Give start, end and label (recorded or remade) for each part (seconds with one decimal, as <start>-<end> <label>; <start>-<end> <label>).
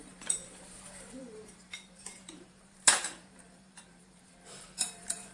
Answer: 0.0-5.3 remade